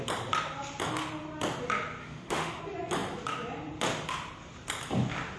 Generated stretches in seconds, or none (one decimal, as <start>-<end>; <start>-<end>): 2.0-2.6